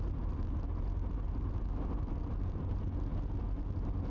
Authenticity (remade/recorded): recorded